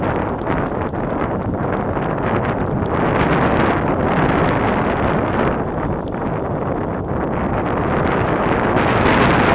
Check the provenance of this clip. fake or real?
real